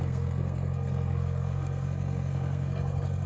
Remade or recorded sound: remade